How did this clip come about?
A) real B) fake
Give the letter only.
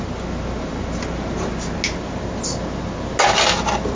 A